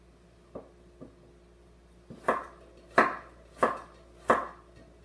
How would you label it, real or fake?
real